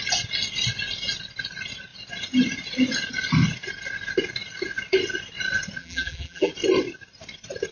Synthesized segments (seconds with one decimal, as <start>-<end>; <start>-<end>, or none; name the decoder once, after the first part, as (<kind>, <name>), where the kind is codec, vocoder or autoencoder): 5.8-6.5 (vocoder, BigVGAN v2)